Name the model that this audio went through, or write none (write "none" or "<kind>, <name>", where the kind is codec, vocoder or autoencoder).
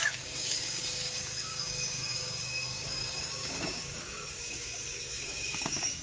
codec, DAC